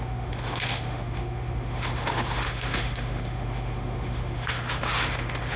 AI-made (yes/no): yes